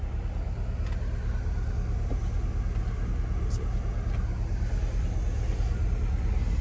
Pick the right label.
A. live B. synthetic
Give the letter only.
A